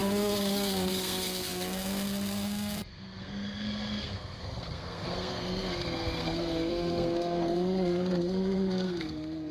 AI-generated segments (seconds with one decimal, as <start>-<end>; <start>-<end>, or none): 0.0-9.5